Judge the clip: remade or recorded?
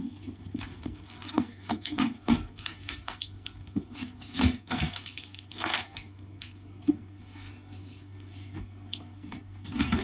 remade